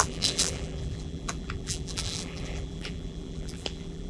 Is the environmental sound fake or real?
fake